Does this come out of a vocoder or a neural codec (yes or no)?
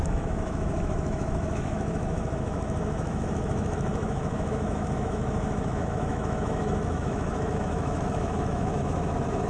yes